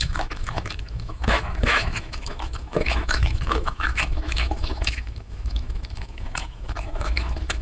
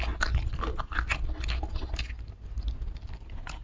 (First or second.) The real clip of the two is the second